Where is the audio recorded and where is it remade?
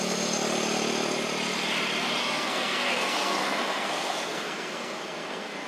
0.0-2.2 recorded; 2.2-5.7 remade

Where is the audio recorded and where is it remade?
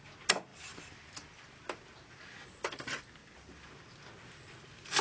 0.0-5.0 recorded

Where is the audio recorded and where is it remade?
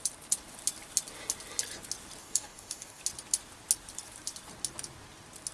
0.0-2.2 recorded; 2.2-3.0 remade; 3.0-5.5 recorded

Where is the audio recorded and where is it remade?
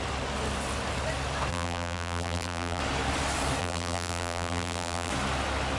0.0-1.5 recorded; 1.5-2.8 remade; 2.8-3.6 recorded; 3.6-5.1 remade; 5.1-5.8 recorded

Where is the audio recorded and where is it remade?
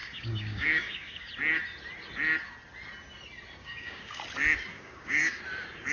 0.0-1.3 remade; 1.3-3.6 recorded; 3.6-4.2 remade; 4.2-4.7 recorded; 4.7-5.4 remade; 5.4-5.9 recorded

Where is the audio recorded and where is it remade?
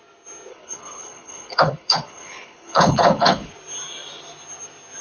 0.0-0.5 recorded; 0.5-3.5 remade; 3.5-5.0 recorded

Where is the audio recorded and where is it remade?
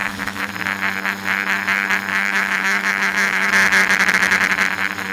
0.0-0.5 remade; 0.5-2.1 recorded; 2.1-3.5 remade; 3.5-5.1 recorded